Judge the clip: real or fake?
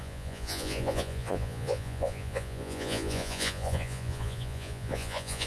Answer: fake